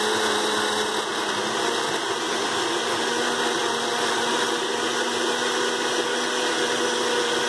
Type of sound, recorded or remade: recorded